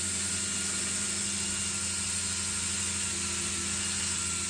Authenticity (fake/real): real